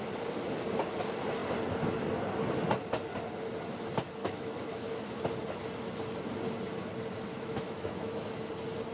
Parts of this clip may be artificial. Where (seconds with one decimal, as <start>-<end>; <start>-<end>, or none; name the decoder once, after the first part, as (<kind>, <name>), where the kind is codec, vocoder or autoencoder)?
4.2-5.2 (autoencoder, DAC-VAE); 7.3-8.5

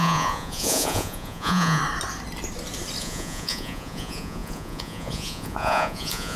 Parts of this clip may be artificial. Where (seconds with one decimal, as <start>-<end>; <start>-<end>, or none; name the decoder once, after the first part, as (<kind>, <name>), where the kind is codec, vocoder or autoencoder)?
0.0-1.8 (vocoder, Vocos); 3.0-6.4

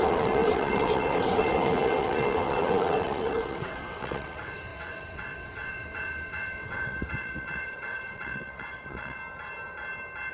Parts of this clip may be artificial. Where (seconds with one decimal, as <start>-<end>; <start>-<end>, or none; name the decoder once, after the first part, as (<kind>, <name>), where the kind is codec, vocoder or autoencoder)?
0.0-9.2 (vocoder, WaveNeXt)

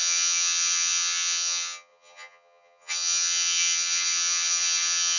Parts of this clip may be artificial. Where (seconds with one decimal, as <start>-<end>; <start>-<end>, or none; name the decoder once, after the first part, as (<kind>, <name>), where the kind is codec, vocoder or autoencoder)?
0.0-5.2 (vocoder, HiFi-GAN)